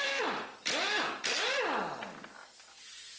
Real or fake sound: real